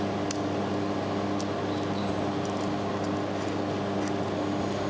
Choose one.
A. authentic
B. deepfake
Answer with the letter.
A